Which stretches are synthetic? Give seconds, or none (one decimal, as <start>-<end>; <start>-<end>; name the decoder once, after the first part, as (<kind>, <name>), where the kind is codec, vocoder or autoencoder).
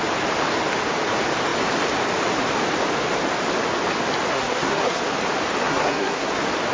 4.3-5.0 (codec, SNAC); 5.6-6.3